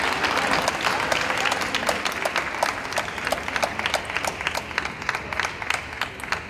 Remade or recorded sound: recorded